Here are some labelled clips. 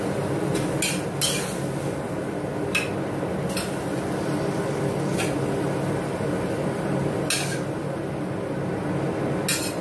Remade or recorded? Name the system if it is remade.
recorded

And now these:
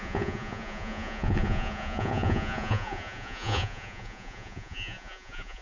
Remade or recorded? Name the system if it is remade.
remade, vocoder, Vocos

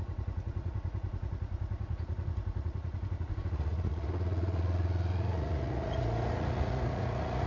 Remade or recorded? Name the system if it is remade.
remade, vocoder, Vocos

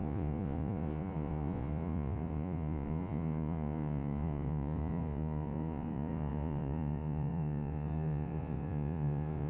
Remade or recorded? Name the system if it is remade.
remade, vocoder, Vocos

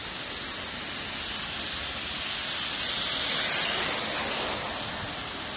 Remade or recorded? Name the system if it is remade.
recorded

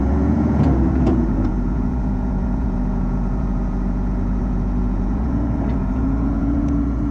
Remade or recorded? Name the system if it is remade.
remade, vocoder, Vocos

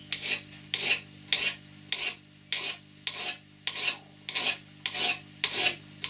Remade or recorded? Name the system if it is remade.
recorded